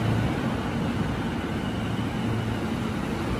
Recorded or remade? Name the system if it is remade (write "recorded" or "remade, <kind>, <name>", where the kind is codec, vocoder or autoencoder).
recorded